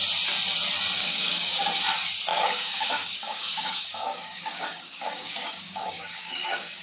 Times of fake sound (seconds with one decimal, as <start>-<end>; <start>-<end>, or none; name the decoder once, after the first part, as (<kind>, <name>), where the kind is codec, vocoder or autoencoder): 1.0-1.6 (codec, DAC); 2.3-6.8